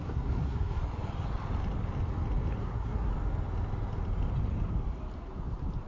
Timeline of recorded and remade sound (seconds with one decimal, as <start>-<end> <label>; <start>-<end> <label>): 0.0-0.8 remade; 0.8-2.6 recorded; 2.6-3.1 remade; 3.1-5.9 recorded